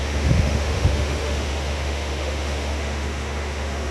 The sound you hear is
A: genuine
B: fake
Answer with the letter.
B